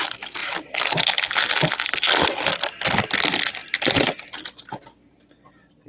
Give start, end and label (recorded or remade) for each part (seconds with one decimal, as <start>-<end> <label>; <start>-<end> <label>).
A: 0.0-5.9 recorded